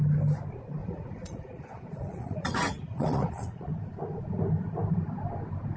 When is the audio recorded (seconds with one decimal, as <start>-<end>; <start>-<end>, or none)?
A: 0.0-0.8; 3.7-5.8